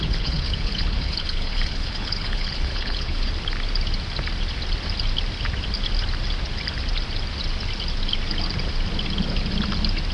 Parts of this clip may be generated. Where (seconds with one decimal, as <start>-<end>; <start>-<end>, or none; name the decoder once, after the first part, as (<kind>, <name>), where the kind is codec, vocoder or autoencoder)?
0.0-3.3 (codec, HILCodec)